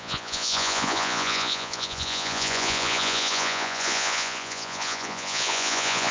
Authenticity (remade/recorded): remade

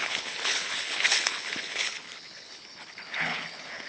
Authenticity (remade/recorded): remade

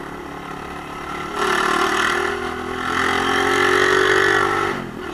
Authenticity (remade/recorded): recorded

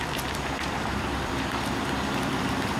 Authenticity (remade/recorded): remade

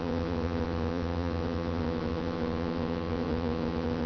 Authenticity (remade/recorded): remade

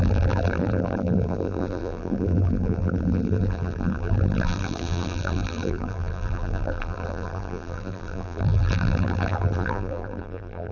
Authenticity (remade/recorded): remade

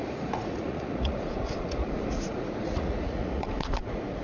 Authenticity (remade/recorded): remade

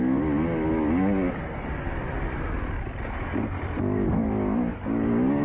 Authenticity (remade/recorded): recorded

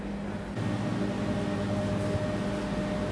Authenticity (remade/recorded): recorded